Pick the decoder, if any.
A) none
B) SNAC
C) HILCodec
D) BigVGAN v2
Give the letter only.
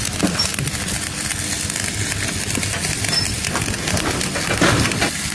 A